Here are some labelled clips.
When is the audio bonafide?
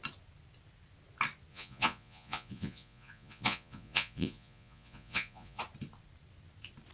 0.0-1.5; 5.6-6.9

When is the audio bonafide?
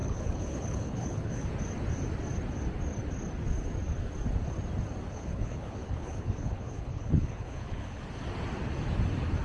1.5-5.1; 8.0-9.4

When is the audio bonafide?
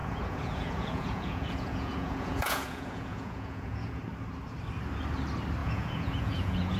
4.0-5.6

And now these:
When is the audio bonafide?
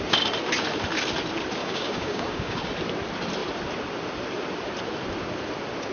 0.0-1.6; 2.7-5.9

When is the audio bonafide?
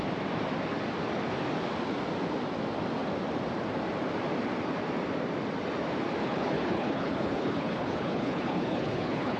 0.0-6.2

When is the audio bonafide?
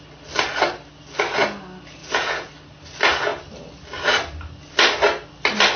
0.0-2.0; 2.5-5.8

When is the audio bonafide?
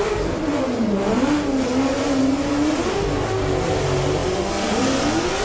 0.0-5.4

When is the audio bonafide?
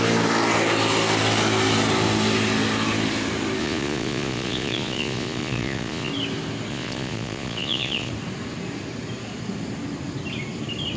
0.0-3.6; 6.1-6.7; 8.1-11.0